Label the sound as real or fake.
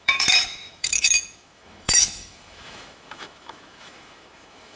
fake